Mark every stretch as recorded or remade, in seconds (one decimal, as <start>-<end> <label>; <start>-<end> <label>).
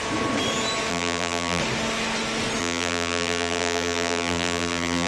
0.0-0.9 recorded; 0.9-1.6 remade; 1.6-2.6 recorded; 2.6-5.1 remade